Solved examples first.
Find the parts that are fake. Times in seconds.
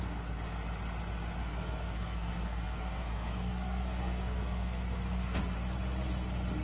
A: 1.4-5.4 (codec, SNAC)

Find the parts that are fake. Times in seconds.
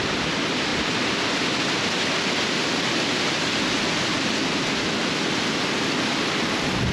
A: none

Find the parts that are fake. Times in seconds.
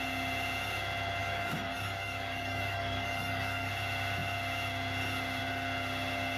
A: 1.2-3.7 (codec, DAC)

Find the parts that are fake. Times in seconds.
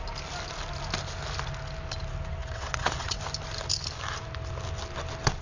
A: 2.4-3.2 (vocoder, WaveNeXt)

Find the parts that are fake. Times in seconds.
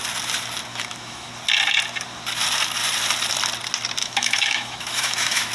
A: 0.7-1.3 (autoencoder, DAC-VAE); 4.0-5.5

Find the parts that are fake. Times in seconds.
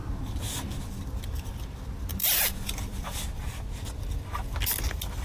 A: 0.0-1.5 (vocoder, BigVGAN v2); 2.1-3.2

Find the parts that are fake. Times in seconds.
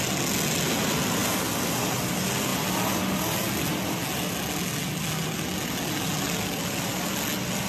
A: none